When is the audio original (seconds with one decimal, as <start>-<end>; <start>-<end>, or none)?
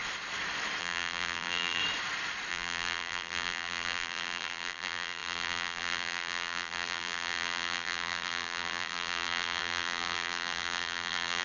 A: 0.0-0.8; 1.8-2.5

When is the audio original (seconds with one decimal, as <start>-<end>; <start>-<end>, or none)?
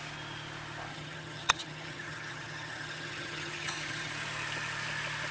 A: 0.0-0.9; 4.1-5.3